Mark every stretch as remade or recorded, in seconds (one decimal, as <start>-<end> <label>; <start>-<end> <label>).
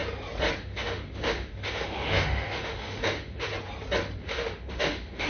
0.0-0.6 recorded; 0.6-3.5 remade; 3.5-4.2 recorded; 4.2-5.3 remade